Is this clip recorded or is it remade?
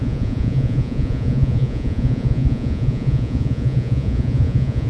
remade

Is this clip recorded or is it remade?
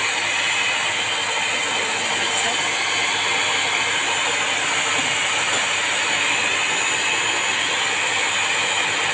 recorded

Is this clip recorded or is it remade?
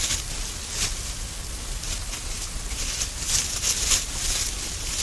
recorded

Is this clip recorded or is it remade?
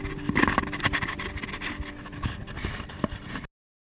recorded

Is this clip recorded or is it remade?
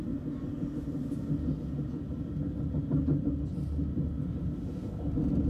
recorded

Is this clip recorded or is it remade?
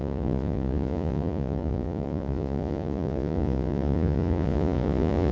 remade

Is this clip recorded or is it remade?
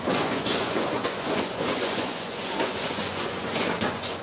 remade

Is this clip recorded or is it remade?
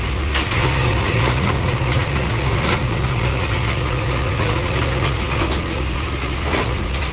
remade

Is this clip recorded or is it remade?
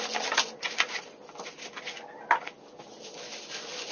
recorded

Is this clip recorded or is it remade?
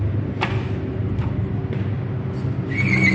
recorded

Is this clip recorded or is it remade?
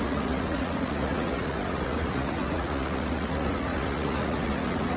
remade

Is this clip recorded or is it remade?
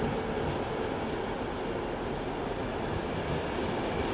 recorded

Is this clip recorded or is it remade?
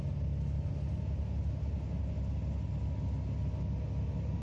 recorded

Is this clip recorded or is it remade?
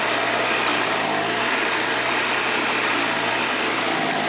recorded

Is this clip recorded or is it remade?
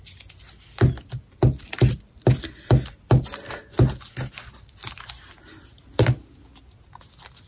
recorded